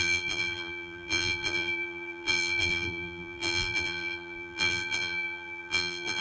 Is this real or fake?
fake